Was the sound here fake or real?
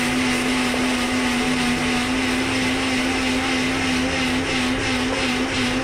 real